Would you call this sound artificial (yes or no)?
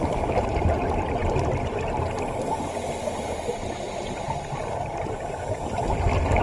no